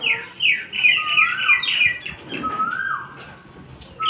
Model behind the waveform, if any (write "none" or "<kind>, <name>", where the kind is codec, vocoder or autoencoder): none